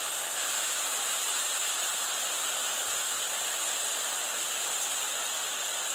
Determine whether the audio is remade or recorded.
recorded